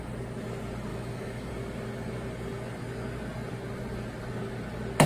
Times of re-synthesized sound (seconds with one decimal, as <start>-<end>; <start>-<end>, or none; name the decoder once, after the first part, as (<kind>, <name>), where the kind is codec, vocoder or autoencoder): 0.9-1.5 (autoencoder, DAC-VAE)